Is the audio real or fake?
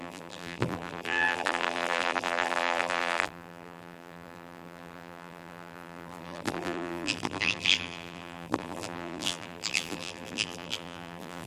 fake